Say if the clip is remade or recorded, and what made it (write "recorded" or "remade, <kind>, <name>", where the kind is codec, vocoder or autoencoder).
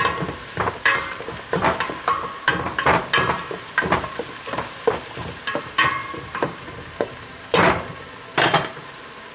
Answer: remade, vocoder, BigVGAN v2